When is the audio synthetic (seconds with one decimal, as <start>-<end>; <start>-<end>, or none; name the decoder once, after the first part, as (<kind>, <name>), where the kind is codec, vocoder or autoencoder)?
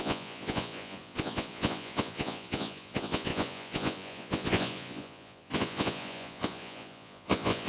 0.0-7.7 (vocoder, Vocos)